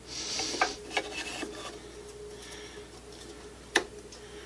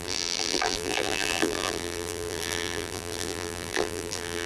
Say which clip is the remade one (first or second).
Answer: second